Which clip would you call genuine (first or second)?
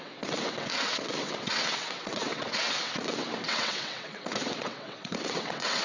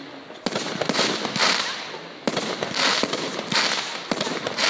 second